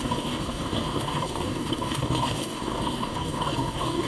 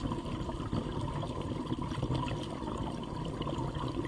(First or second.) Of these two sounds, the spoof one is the first